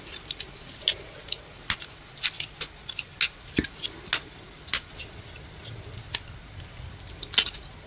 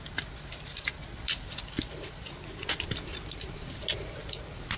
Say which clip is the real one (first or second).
first